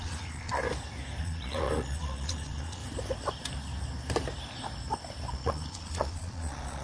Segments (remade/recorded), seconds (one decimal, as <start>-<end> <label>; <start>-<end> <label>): 0.0-0.6 remade; 0.6-1.2 recorded; 1.2-2.8 remade; 2.8-5.3 recorded; 5.3-6.8 remade